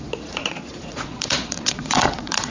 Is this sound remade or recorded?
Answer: remade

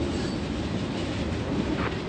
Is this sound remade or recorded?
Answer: recorded